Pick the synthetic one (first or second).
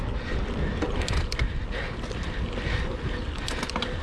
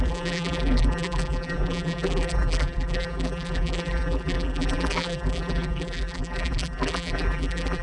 second